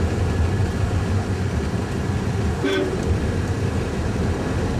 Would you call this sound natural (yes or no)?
no